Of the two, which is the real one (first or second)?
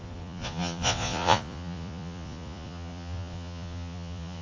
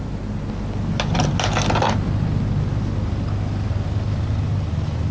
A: second